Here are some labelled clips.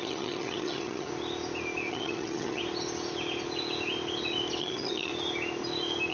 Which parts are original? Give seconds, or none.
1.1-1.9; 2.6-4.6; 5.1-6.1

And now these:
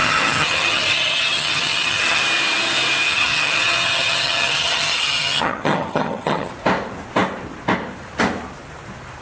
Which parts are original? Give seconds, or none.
2.2-3.1; 6.5-9.2

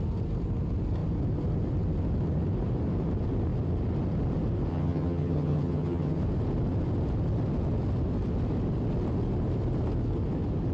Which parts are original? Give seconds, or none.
0.0-4.7; 6.2-10.7

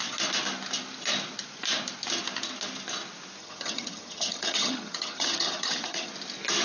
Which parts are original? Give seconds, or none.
0.0-3.4; 6.1-6.6

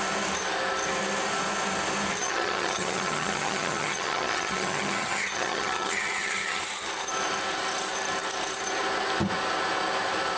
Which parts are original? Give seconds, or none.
0.0-2.2; 6.6-10.4

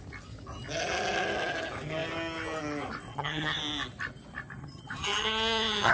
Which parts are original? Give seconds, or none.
0.0-3.1; 3.6-4.6